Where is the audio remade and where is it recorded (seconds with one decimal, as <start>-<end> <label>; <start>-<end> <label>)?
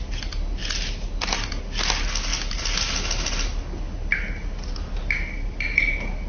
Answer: 0.0-6.3 recorded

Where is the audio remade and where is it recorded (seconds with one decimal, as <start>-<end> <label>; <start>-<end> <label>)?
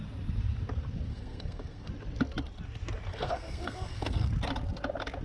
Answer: 0.0-1.1 recorded; 1.1-1.9 remade; 1.9-3.1 recorded; 3.1-4.3 remade; 4.3-5.2 recorded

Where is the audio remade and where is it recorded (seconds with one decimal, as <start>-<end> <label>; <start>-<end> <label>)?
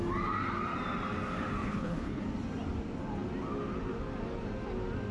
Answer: 0.0-1.6 recorded; 1.6-2.2 remade; 2.2-5.1 recorded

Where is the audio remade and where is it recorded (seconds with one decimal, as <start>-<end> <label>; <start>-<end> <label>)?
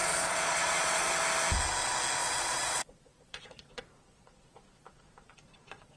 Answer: 0.0-1.1 remade; 1.1-2.2 recorded; 2.2-6.0 remade